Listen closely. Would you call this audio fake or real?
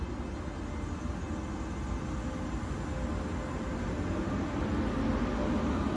real